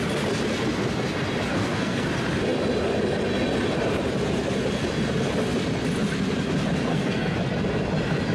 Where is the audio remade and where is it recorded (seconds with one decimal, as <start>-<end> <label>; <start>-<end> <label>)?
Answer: 0.0-1.5 recorded; 1.5-2.1 remade; 2.1-6.9 recorded; 6.9-7.4 remade; 7.4-8.3 recorded